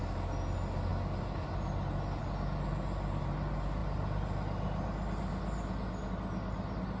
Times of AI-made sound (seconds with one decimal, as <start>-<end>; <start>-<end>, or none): none